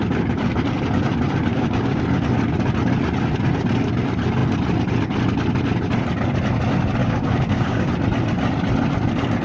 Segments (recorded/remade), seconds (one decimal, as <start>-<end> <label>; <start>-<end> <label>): 0.0-1.5 recorded; 1.5-2.0 remade; 2.0-7.0 recorded; 7.0-7.9 remade; 7.9-9.4 recorded